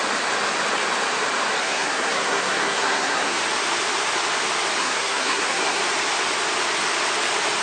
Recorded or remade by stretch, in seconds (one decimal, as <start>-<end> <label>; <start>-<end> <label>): 0.0-1.6 recorded; 1.6-3.4 remade; 3.4-4.8 recorded; 4.8-5.8 remade; 5.8-7.6 recorded